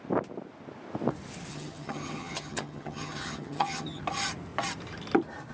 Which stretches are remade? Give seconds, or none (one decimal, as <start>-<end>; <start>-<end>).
1.5-4.0